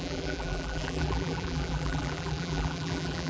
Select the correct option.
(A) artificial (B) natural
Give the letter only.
A